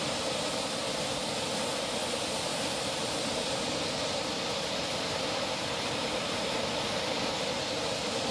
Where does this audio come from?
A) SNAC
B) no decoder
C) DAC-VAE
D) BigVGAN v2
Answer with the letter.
B